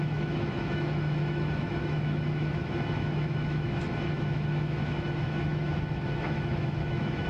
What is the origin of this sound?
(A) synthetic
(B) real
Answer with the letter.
A